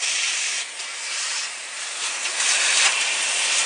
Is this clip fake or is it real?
fake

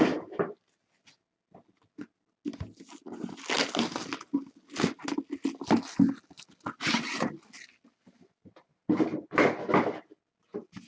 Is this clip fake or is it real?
real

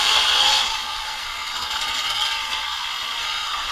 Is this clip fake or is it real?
fake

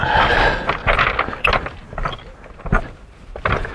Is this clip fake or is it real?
real